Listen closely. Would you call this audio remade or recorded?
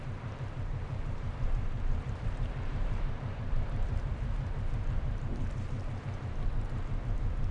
remade